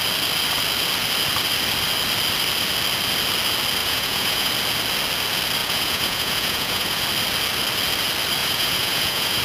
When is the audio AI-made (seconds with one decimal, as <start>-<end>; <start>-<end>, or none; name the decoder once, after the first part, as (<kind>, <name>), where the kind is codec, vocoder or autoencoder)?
3.8-4.5 (vocoder, Vocos); 5.6-7.0; 8.4-9.4